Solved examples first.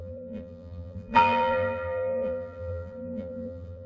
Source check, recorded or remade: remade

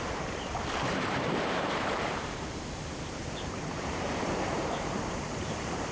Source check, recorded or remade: remade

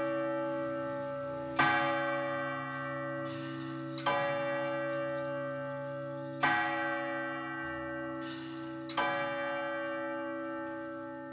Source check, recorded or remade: recorded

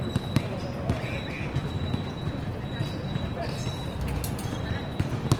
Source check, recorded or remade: recorded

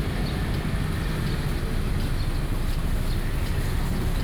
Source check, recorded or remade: recorded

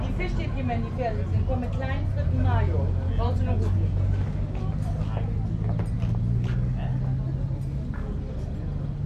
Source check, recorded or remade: recorded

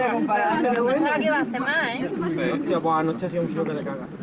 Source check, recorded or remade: remade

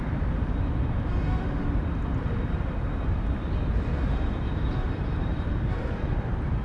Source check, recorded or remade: remade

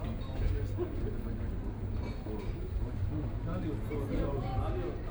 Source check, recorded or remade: recorded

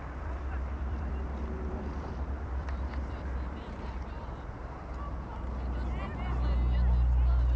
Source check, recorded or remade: remade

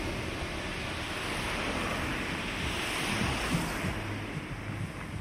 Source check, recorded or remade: recorded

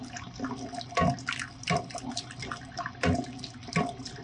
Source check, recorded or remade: recorded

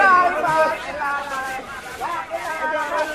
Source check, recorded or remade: remade